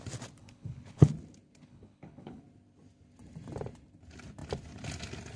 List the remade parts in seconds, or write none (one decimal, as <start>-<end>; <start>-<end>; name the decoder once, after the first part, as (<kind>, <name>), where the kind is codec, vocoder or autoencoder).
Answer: 0.4-1.1 (codec, HILCodec); 1.6-2.4